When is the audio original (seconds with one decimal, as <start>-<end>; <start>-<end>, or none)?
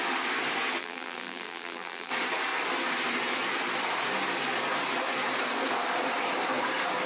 0.0-0.8; 2.1-7.1